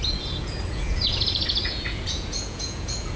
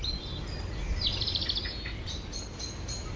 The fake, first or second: first